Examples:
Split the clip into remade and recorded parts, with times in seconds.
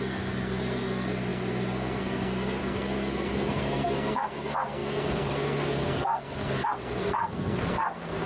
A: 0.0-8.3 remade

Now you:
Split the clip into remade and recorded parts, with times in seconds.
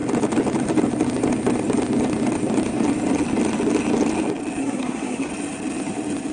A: 0.0-4.6 recorded; 4.6-5.3 remade; 5.3-6.3 recorded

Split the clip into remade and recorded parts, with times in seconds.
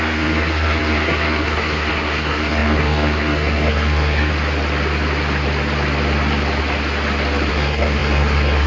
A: 0.0-4.3 remade; 4.3-7.5 recorded; 7.5-8.7 remade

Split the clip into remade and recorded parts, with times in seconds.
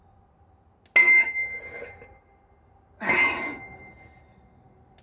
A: 0.0-5.0 recorded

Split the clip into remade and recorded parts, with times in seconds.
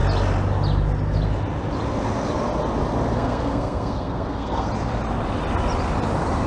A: 0.0-3.1 recorded; 3.1-4.7 remade; 4.7-6.5 recorded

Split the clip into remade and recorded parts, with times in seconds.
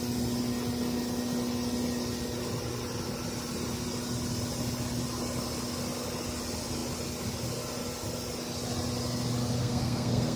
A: 0.0-9.6 recorded; 9.6-10.4 remade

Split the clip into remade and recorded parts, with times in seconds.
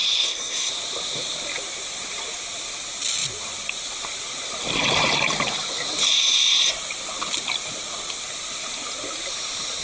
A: 0.0-0.7 remade; 0.7-9.8 recorded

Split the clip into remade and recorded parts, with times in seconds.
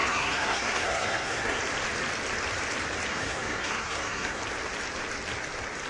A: 0.0-1.6 remade; 1.6-3.1 recorded; 3.1-4.4 remade; 4.4-5.9 recorded